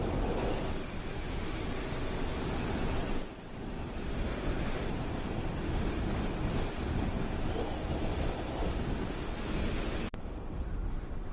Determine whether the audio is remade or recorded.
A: recorded